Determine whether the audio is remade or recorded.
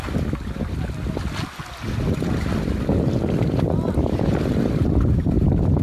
recorded